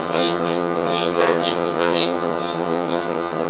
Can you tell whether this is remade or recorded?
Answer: remade